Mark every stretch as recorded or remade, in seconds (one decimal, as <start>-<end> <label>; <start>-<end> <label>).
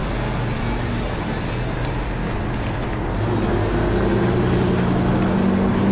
0.0-5.9 recorded